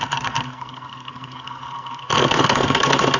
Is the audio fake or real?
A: fake